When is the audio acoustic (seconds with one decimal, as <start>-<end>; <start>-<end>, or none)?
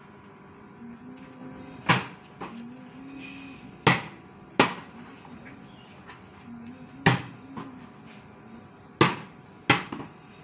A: 0.0-10.4